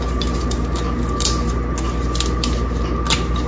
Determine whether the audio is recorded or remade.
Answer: recorded